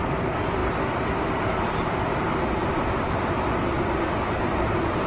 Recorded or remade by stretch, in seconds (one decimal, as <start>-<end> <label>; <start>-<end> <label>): 0.0-5.1 recorded